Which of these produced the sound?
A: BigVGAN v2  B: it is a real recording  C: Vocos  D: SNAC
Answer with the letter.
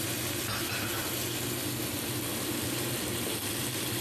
B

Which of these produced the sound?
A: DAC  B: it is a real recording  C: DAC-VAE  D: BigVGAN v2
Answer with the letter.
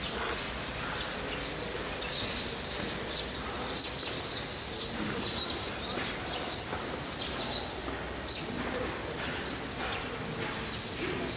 B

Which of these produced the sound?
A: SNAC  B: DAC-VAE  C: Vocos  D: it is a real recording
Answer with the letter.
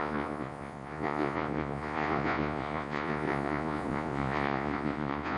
C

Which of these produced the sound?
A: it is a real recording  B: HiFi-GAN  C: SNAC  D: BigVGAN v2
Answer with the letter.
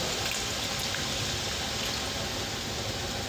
A